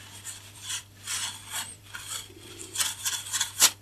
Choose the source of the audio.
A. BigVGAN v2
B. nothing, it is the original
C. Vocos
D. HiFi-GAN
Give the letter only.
A